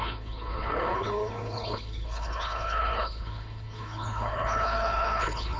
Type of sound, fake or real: fake